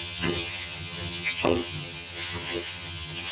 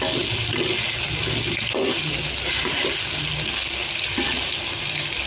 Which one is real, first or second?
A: second